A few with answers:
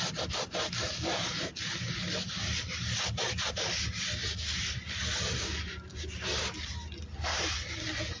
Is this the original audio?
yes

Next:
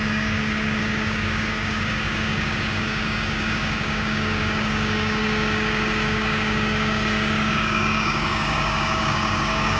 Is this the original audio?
no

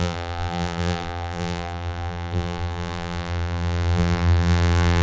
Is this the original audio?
no